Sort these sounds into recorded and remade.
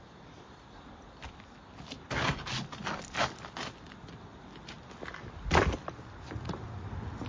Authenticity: recorded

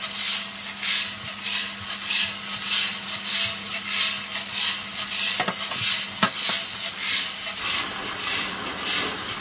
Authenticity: recorded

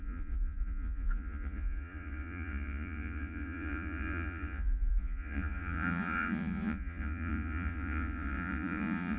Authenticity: remade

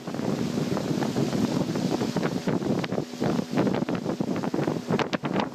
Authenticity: recorded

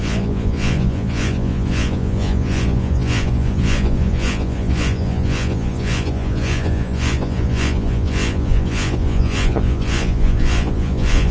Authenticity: remade